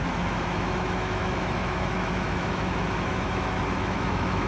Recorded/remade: remade